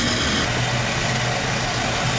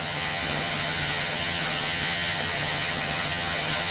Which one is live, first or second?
first